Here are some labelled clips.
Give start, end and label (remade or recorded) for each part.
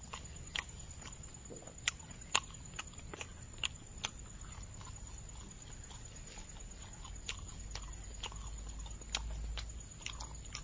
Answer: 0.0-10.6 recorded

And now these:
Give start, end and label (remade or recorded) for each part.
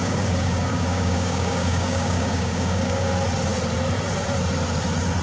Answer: 0.0-3.1 remade; 3.1-5.2 recorded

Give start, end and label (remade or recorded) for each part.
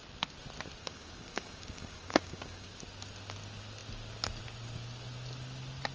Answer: 0.0-0.8 recorded; 0.8-2.8 remade; 2.8-5.9 recorded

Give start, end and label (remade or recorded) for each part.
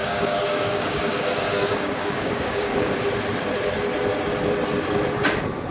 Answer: 0.0-3.0 remade; 3.0-5.7 recorded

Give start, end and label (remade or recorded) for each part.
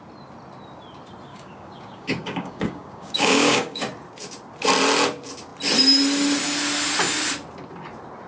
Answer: 0.0-1.3 recorded; 1.3-3.8 remade; 3.8-8.3 recorded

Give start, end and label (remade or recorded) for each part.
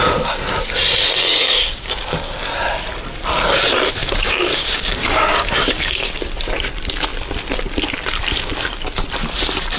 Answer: 0.0-1.3 recorded; 1.3-1.9 remade; 1.9-4.0 recorded; 4.0-6.2 remade; 6.2-9.8 recorded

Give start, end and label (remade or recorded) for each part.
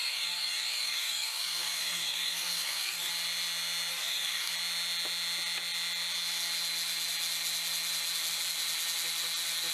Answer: 0.0-3.1 remade; 3.1-3.9 recorded; 3.9-4.5 remade; 4.5-9.7 recorded